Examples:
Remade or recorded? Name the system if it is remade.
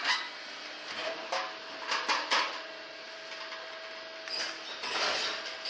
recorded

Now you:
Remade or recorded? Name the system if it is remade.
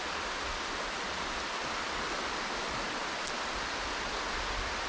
recorded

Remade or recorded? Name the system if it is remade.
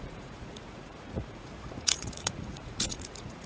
remade, vocoder, Vocos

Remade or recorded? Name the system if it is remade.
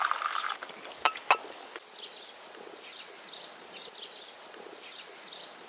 recorded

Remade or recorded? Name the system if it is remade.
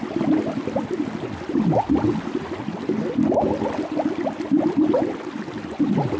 recorded